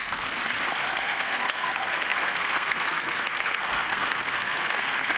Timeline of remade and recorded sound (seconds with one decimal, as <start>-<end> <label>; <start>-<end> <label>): 0.0-0.4 remade; 0.4-1.0 recorded; 1.0-5.2 remade